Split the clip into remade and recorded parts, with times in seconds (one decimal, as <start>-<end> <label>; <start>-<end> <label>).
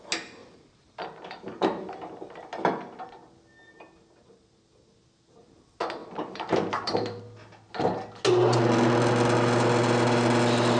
0.0-0.4 recorded; 0.4-2.1 remade; 2.1-6.0 recorded; 6.0-7.2 remade; 7.2-10.8 recorded